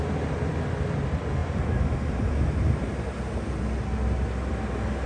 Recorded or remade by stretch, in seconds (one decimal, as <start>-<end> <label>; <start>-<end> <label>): 0.0-5.1 recorded